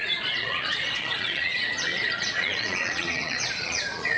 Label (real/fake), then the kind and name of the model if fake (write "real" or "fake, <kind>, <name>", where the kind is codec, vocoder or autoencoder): fake, vocoder, Vocos